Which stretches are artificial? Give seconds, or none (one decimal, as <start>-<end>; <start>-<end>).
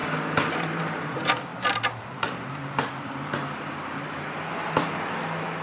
0.0-5.6